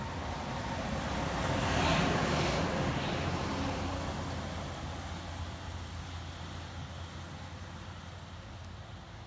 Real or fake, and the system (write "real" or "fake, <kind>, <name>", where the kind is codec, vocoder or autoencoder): real